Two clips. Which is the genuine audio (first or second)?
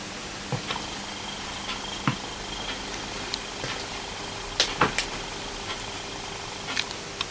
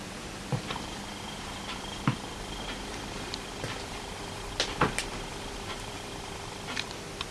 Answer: first